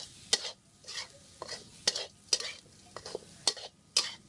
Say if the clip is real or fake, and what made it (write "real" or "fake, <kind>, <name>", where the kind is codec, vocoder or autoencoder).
real